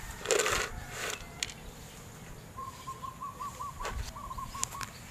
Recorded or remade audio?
recorded